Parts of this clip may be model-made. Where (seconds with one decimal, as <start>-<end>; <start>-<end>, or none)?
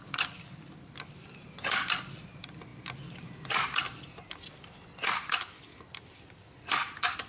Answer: none